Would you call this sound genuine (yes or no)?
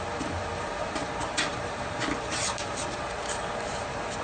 no